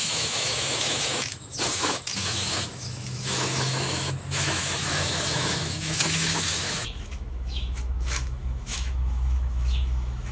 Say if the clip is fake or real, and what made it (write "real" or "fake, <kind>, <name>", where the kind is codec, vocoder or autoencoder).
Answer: fake, autoencoder, DAC-VAE